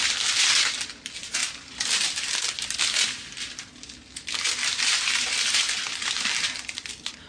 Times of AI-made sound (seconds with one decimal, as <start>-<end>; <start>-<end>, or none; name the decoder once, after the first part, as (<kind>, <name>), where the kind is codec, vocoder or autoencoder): none